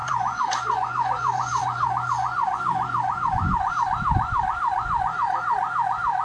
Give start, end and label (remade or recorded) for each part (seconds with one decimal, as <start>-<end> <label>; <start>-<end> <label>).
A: 0.0-3.7 remade; 3.7-6.2 recorded